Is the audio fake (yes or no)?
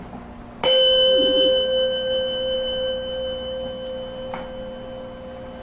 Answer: no